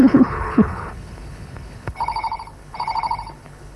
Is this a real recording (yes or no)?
no